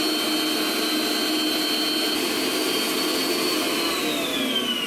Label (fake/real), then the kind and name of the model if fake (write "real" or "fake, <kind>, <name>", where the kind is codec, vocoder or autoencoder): real